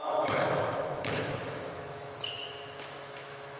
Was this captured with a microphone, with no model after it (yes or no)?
no